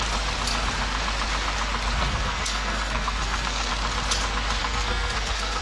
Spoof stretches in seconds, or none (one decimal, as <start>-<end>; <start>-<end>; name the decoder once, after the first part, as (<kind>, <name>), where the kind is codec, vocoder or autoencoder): 2.0-3.7 (codec, SNAC); 4.6-5.6